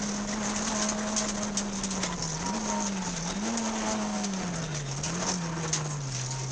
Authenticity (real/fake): real